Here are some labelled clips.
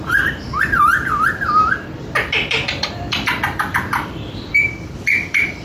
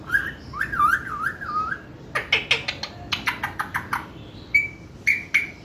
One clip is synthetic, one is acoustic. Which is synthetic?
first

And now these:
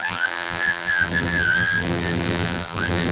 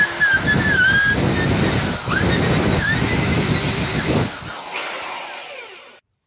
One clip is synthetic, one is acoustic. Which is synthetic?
first